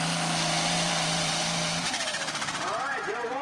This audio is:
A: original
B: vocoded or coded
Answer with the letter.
B